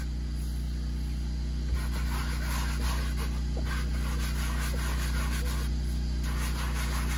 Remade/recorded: recorded